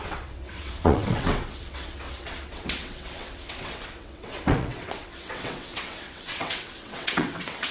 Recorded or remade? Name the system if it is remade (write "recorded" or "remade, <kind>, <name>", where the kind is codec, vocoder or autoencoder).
remade, vocoder, WaveNeXt